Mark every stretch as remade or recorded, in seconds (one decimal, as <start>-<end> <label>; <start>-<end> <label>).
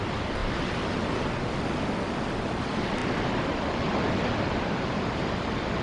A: 0.0-5.8 recorded